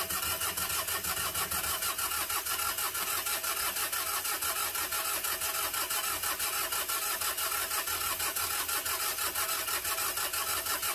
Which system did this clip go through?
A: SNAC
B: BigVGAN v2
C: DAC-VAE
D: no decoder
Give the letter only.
D